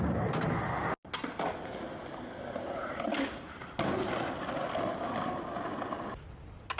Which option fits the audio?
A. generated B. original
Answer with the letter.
B